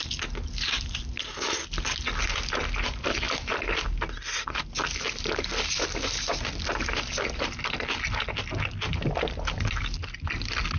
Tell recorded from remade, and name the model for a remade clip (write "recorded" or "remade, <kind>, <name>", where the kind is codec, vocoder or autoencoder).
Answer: recorded